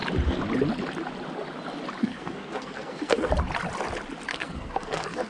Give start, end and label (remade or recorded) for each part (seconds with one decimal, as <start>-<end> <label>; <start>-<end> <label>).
0.0-2.0 recorded; 2.0-3.3 remade; 3.3-4.3 recorded; 4.3-5.3 remade